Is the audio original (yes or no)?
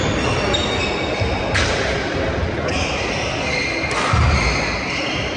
yes